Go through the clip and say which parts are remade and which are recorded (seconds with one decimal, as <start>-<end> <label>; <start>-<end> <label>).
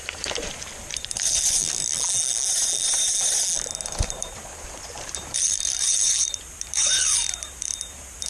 0.0-1.6 remade; 1.6-4.2 recorded; 4.2-8.3 remade